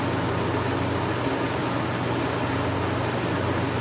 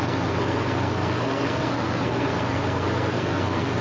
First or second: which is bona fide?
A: first